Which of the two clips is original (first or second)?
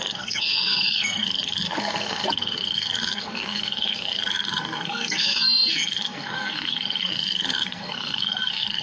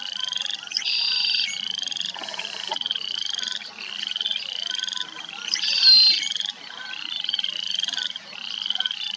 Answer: second